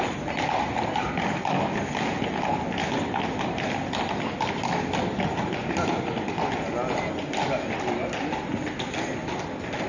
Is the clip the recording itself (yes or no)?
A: yes